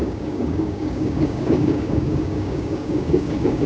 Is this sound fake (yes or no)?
yes